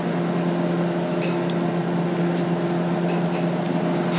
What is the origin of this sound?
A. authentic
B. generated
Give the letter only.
A